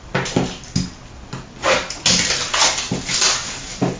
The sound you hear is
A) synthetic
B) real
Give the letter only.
B